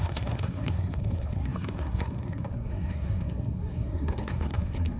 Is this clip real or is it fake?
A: fake